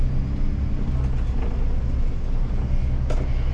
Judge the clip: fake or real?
real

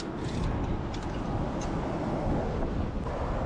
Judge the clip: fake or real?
real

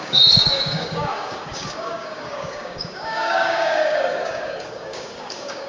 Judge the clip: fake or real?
fake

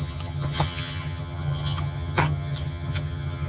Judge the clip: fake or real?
fake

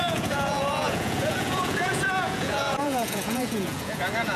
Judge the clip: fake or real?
fake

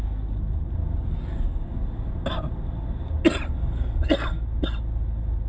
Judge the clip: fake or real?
real